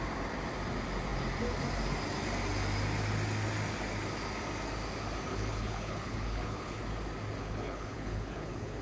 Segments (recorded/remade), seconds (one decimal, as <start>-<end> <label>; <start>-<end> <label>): 0.0-5.3 recorded; 5.3-6.8 remade; 6.8-7.4 recorded; 7.4-8.8 remade